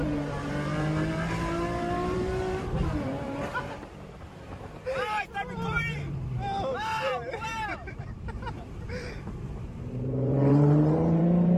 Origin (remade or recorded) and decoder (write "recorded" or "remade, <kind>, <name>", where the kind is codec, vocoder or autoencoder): remade, vocoder, BigVGAN v2